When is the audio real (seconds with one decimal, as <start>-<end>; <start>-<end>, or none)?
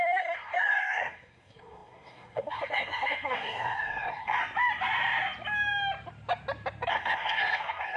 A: 4.4-6.9